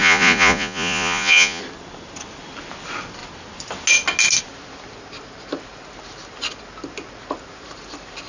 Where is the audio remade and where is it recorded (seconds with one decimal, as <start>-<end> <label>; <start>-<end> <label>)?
0.0-1.6 remade; 1.6-8.3 recorded